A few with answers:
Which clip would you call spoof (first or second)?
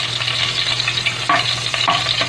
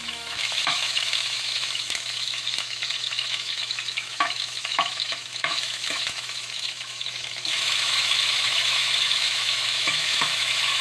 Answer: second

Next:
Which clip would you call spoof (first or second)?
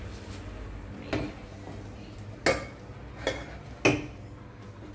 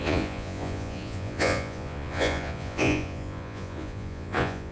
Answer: second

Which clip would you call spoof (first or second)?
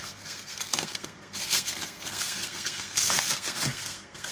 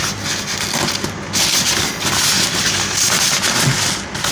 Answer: first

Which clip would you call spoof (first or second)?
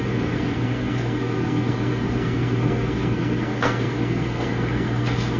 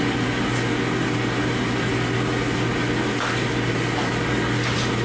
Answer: first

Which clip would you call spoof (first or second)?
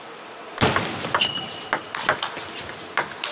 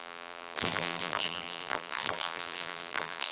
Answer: second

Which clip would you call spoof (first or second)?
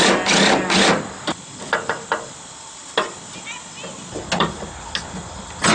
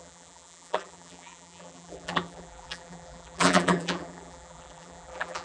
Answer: second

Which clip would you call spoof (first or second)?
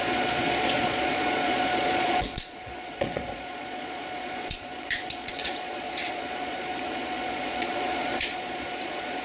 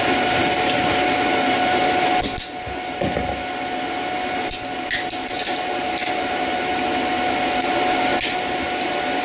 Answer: first